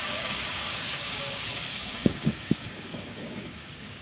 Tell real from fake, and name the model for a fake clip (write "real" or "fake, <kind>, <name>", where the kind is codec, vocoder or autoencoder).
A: fake, codec, DAC